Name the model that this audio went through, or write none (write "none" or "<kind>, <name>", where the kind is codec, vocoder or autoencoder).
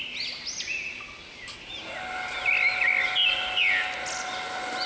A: none